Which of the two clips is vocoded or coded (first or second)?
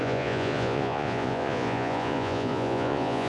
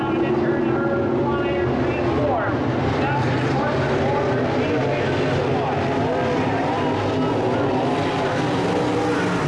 first